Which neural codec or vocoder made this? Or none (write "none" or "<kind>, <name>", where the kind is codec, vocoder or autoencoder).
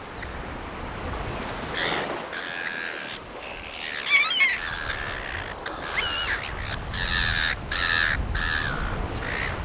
none